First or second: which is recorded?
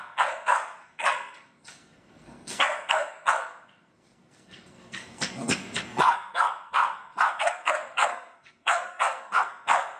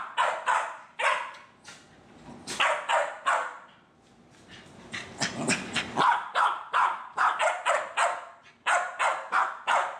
second